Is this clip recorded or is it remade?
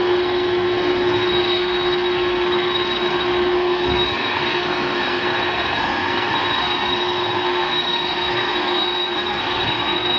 remade